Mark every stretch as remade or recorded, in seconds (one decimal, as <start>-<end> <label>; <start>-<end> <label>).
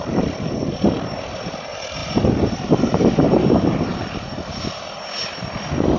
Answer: 0.0-6.0 recorded